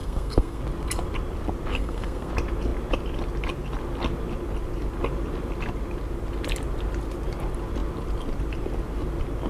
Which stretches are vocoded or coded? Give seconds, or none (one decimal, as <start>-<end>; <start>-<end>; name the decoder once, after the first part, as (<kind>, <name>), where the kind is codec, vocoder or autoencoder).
0.0-0.6 (codec, SNAC); 1.7-2.3

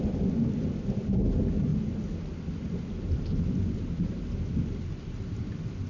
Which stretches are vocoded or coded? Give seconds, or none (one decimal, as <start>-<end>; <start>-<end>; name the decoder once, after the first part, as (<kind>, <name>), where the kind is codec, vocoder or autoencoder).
none

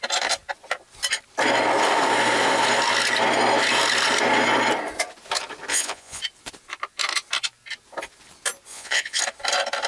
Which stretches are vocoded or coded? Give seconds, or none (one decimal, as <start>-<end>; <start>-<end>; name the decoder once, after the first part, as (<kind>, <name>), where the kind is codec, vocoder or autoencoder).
5.7-6.2 (vocoder, Vocos); 8.7-9.2

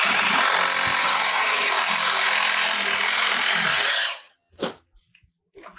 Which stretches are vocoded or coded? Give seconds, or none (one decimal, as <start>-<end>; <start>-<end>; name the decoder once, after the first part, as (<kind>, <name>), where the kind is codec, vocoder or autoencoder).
1.0-1.7 (vocoder, HiFi-GAN); 3.7-4.5